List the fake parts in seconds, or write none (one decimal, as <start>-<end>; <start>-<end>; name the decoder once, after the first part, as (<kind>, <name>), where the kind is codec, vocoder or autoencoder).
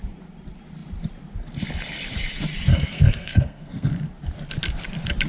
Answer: 2.7-3.9 (codec, SNAC)